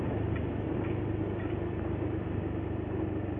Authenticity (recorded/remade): recorded